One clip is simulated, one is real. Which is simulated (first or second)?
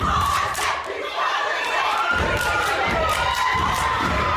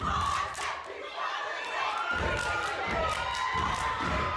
first